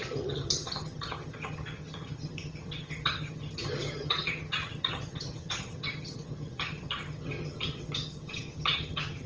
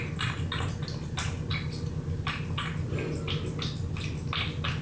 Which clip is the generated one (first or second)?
first